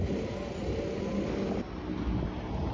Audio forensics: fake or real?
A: real